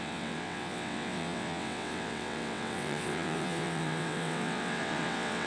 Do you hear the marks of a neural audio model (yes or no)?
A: yes